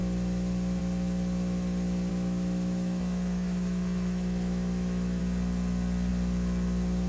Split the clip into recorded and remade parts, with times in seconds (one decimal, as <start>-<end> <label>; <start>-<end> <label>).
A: 0.0-2.1 recorded; 2.1-5.2 remade; 5.2-7.1 recorded